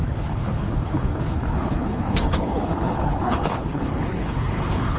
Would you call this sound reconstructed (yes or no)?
yes